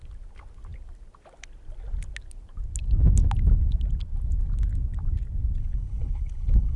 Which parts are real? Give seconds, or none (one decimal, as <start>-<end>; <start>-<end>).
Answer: 0.0-5.6